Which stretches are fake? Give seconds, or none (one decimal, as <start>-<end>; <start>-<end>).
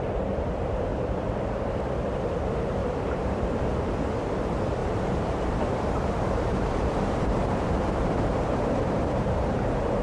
0.9-1.7; 2.8-3.6; 4.8-10.0